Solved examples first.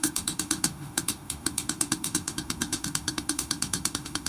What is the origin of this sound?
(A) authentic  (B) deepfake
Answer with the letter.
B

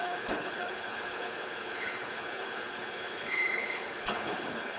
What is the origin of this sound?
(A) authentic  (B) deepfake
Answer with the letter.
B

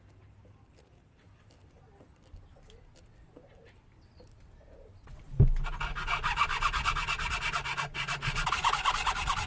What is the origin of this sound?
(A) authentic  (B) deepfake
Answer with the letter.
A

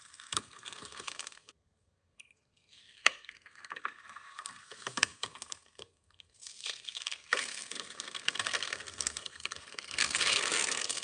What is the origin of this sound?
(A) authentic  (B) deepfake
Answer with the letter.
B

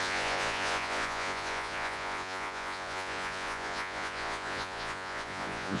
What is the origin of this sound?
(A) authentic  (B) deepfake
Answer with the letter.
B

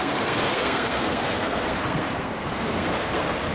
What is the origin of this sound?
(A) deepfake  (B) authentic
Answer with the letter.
A